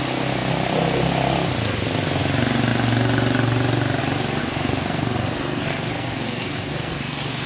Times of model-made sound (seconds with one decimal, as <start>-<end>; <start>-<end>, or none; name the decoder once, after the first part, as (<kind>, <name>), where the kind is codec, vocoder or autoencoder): 4.4-7.5 (codec, SNAC)

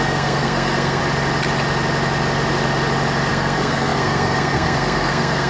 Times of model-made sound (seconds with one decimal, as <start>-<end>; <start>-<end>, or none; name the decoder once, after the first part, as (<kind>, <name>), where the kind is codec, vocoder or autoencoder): 0.0-1.0 (codec, SNAC); 3.3-5.5

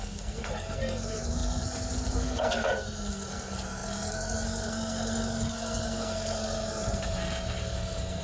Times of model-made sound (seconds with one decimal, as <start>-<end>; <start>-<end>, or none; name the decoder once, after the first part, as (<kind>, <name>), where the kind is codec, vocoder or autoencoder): 0.0-8.2 (codec, SNAC)

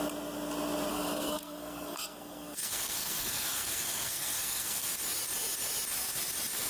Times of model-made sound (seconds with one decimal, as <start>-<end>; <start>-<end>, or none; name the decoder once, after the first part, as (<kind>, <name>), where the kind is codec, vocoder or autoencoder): 0.9-4.9 (codec, SNAC)

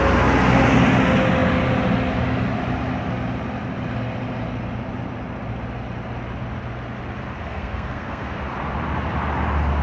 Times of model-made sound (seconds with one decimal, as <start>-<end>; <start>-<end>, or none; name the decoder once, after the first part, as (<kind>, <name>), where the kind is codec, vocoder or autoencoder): 7.4-8.3 (codec, SNAC)

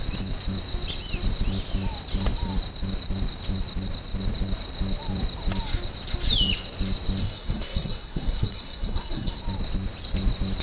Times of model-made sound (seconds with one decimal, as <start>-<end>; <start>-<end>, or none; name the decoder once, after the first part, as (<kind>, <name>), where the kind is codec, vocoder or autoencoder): 7.2-9.4 (codec, SNAC)

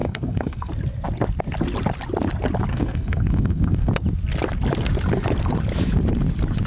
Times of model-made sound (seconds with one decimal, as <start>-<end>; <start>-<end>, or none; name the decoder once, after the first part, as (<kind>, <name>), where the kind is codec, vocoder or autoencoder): 0.0-0.7 (codec, SNAC); 2.7-3.9